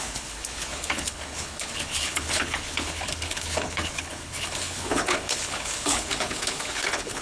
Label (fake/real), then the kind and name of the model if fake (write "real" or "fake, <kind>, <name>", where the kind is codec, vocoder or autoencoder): fake, codec, HILCodec